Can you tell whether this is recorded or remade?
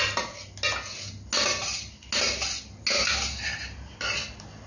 recorded